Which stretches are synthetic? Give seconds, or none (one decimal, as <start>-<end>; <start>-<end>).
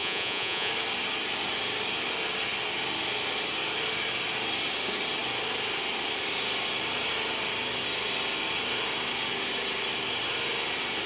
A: 0.0-0.7